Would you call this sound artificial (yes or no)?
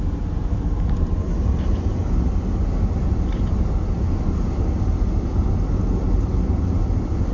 no